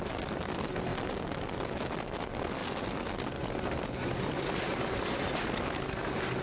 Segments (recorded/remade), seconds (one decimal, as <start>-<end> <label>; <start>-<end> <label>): 0.0-6.4 recorded

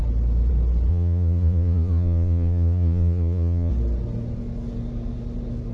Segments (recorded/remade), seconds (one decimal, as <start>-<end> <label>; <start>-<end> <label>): 0.0-0.9 recorded; 0.9-3.7 remade; 3.7-5.7 recorded

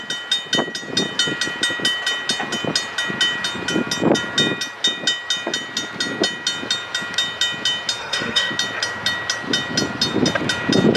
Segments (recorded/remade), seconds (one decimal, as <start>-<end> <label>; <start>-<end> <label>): 0.0-8.0 recorded; 8.0-8.5 remade; 8.5-11.0 recorded

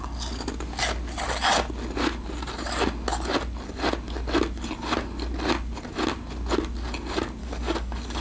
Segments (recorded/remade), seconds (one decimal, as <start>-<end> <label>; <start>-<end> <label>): 0.0-7.4 recorded; 7.4-8.2 remade

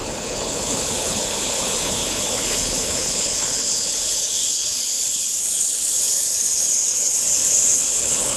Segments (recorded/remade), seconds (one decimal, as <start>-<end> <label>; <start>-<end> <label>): 0.0-8.4 remade